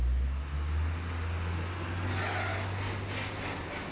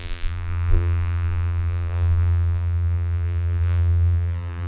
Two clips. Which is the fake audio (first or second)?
second